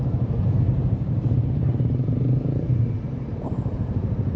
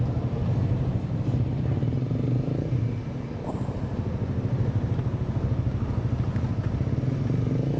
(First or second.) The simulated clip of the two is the first